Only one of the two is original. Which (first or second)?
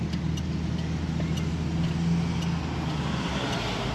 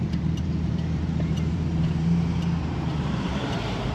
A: first